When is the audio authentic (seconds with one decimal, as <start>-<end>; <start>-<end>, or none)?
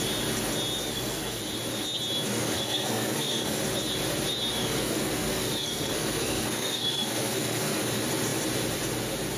0.0-0.8; 1.4-2.3; 3.6-4.6; 7.8-9.4